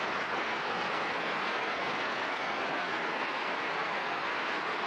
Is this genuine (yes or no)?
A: no